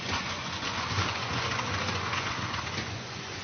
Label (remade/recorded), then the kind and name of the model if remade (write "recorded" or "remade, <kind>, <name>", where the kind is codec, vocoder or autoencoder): remade, vocoder, Vocos